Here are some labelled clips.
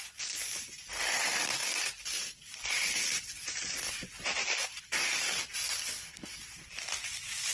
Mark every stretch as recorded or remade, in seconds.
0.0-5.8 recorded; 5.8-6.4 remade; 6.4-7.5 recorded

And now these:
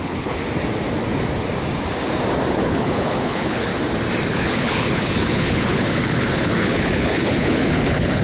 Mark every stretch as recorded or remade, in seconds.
0.0-0.4 remade; 0.4-2.5 recorded; 2.5-3.7 remade; 3.7-4.3 recorded; 4.3-8.2 remade

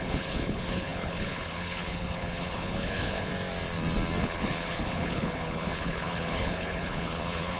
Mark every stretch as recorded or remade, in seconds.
0.0-3.3 remade; 3.3-4.2 recorded; 4.2-7.6 remade

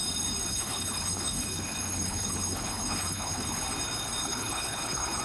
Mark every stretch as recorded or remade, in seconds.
0.0-0.5 recorded; 0.5-3.6 remade; 3.6-4.2 recorded; 4.2-5.2 remade

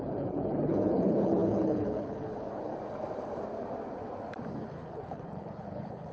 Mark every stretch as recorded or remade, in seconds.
0.0-2.7 remade; 2.7-4.5 recorded; 4.5-6.1 remade